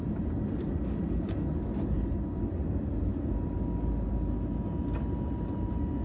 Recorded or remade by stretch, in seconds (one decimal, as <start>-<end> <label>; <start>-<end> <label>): 0.0-6.0 recorded